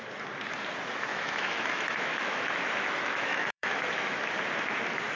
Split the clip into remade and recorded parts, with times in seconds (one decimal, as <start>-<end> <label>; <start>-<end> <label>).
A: 0.0-1.1 recorded; 1.1-4.2 remade; 4.2-5.2 recorded